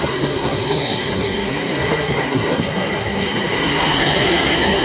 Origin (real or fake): fake